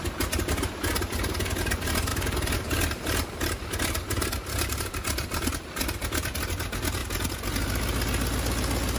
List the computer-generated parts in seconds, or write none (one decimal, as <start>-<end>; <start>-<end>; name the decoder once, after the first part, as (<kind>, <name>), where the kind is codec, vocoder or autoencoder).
2.1-5.8 (vocoder, BigVGAN v2)